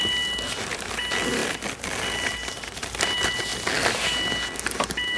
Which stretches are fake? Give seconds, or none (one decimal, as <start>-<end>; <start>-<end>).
0.0-3.5; 4.8-5.2